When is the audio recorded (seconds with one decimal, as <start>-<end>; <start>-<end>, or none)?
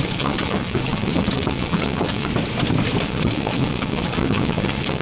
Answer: 2.3-3.0